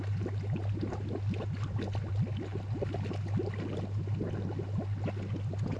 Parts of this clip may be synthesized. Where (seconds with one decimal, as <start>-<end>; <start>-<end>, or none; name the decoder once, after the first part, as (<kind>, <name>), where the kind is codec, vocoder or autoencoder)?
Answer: none